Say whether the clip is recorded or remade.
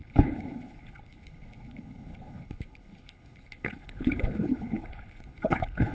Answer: remade